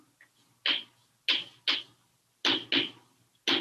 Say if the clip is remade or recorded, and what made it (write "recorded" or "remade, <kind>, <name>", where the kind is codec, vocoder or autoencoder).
recorded